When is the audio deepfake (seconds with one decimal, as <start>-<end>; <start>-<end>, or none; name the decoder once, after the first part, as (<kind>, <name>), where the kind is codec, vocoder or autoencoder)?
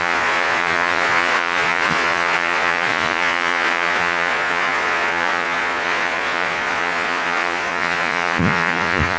0.0-9.2 (vocoder, Vocos)